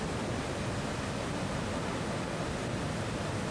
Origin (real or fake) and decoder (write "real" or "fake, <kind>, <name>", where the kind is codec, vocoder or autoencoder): real